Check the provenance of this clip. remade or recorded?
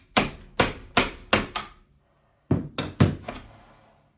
recorded